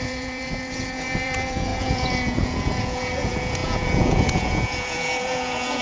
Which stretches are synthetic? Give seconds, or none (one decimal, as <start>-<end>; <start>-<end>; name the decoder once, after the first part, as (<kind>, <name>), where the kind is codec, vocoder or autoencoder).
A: 0.0-5.8 (vocoder, Vocos)